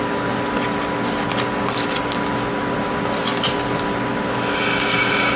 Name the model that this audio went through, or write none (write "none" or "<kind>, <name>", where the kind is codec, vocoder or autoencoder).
none